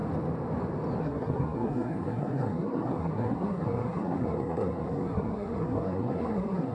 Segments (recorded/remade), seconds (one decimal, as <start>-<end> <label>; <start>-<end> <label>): 0.0-1.0 recorded; 1.0-6.7 remade